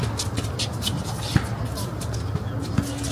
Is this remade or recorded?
recorded